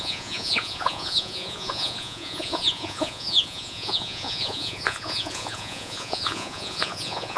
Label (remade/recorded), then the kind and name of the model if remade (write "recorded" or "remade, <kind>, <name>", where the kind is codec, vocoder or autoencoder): remade, vocoder, Vocos